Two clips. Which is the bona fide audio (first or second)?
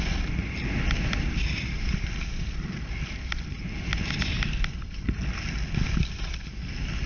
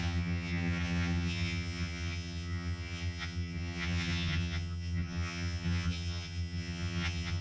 first